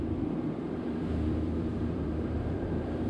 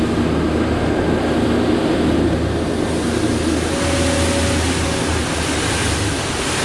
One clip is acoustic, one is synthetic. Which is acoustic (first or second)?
second